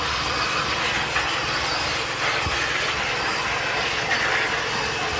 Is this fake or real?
real